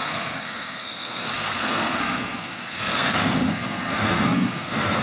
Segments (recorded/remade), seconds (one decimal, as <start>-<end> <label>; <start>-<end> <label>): 0.0-5.0 remade